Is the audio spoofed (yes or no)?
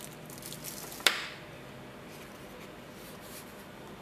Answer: no